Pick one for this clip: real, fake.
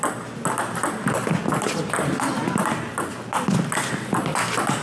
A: real